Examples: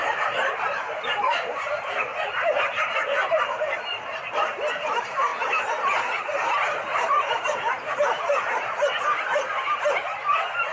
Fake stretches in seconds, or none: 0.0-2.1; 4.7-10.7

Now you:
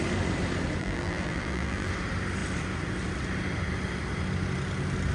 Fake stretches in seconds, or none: 0.8-1.9

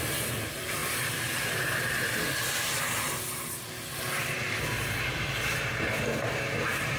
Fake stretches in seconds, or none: 0.8-3.5

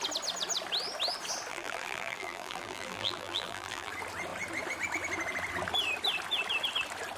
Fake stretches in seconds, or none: 1.5-3.9

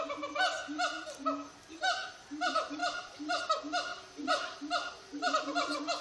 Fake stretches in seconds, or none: 2.8-3.4

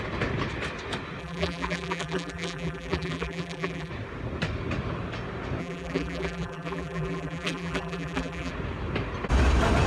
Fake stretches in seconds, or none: 1.2-3.9; 5.6-8.5

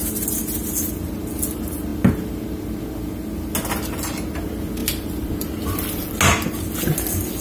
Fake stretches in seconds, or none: 4.8-5.7

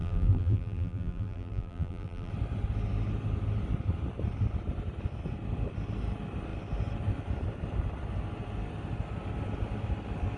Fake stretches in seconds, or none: 0.0-2.3